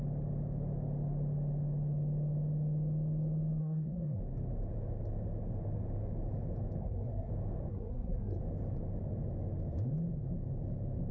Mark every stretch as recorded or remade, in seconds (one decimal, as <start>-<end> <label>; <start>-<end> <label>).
0.0-3.6 recorded; 3.6-4.2 remade; 4.2-6.8 recorded; 6.8-7.3 remade; 7.3-7.7 recorded; 7.7-8.4 remade; 8.4-11.1 recorded